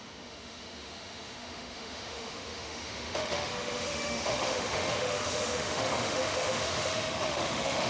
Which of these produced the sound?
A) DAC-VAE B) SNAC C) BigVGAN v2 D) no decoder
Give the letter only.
A